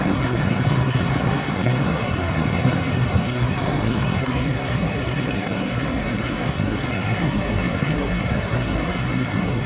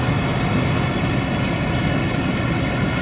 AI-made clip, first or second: first